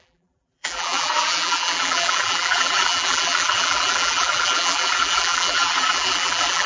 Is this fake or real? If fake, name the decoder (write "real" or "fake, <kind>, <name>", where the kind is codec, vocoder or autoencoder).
fake, vocoder, BigVGAN v2